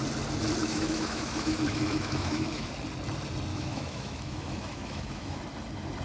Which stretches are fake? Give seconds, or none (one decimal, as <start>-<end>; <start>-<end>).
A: 0.6-2.7; 3.5-5.4